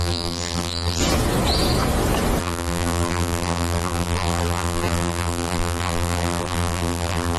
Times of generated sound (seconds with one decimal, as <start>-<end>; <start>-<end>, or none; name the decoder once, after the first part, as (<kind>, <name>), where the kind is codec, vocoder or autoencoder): 0.0-1.0 (vocoder, BigVGAN v2); 2.4-7.4